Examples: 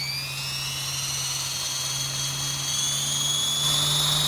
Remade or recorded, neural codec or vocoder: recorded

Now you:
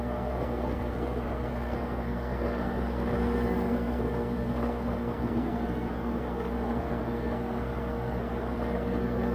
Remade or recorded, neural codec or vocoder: remade, codec, SNAC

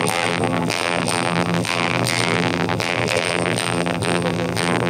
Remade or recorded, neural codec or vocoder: remade, vocoder, BigVGAN v2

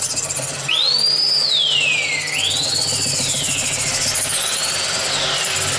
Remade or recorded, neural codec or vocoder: recorded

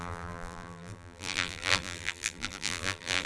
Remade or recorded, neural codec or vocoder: remade, vocoder, BigVGAN v2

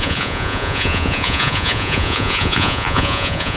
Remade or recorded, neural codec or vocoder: remade, vocoder, Vocos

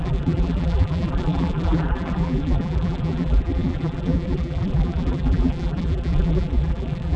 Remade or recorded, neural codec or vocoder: remade, vocoder, BigVGAN v2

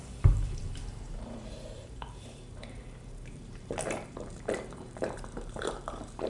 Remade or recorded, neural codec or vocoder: remade, vocoder, BigVGAN v2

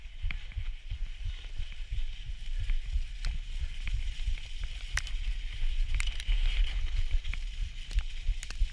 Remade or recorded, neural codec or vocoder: recorded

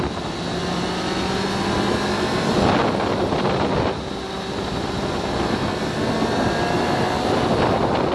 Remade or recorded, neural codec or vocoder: recorded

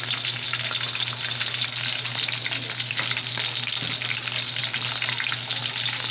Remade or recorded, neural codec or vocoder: recorded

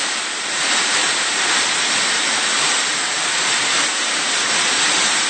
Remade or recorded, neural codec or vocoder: recorded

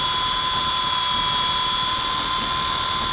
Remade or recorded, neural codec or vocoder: recorded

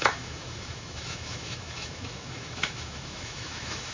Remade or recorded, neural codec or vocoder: remade, autoencoder, DAC-VAE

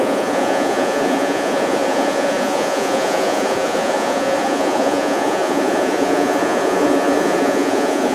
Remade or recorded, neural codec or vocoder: remade, vocoder, Vocos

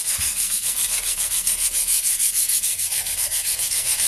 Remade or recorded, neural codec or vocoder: remade, codec, SNAC